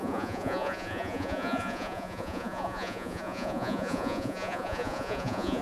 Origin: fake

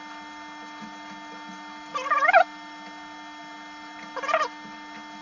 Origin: real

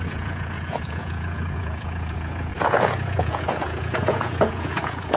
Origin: fake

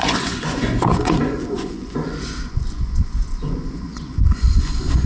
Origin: fake